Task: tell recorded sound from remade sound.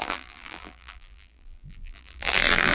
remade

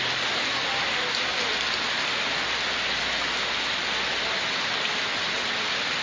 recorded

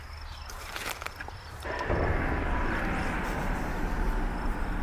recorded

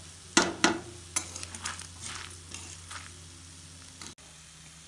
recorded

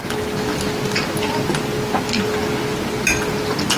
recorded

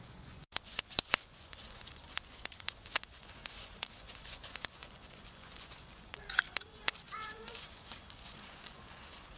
remade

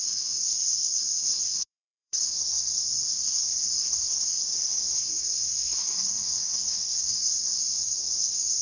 remade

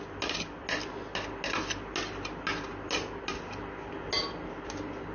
recorded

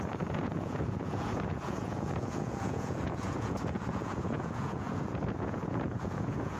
remade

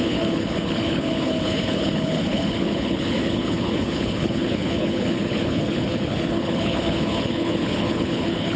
remade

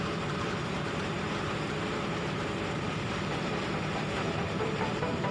remade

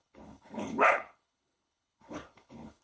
remade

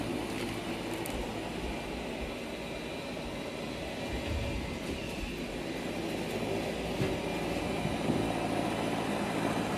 recorded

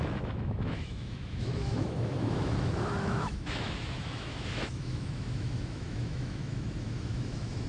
remade